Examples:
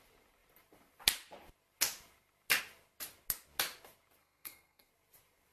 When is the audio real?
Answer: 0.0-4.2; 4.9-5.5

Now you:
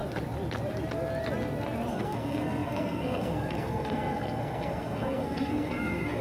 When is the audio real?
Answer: 0.0-1.9

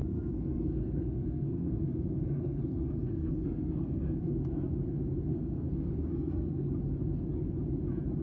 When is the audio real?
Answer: 4.2-5.3; 6.7-8.2

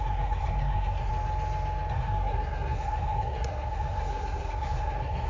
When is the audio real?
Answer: 1.1-1.9

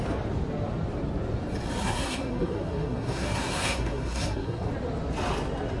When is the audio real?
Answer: 0.0-1.8; 4.7-5.8

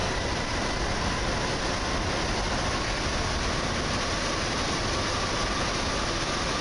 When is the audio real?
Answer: 0.0-6.6

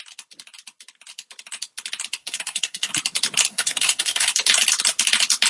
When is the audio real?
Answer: 0.0-2.2; 2.9-3.5; 4.3-5.5